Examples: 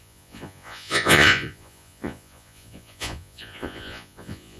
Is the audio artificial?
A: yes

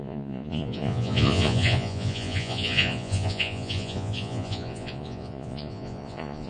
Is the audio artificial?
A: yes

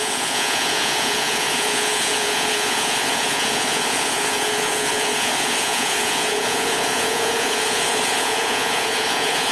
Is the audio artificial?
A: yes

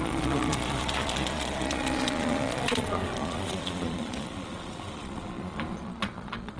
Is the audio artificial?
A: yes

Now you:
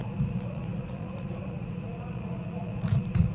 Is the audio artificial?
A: yes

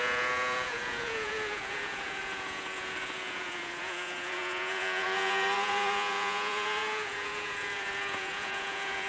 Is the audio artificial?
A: yes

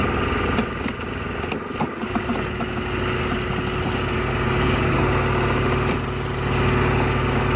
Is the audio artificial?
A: no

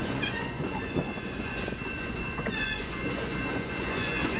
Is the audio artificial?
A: yes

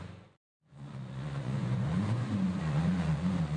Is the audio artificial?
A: yes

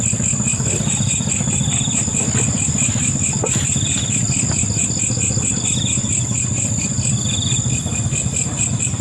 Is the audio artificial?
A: no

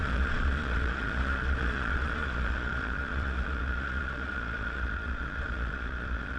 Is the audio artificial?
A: yes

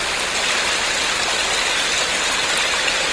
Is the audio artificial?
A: no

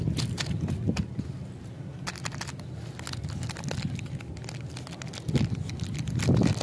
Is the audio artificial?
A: no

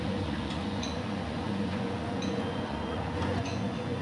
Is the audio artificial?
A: yes